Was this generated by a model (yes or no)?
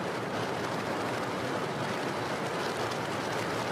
no